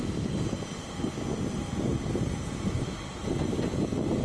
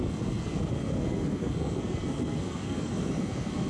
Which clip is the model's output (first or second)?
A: second